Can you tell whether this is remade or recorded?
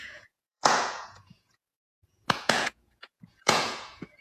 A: remade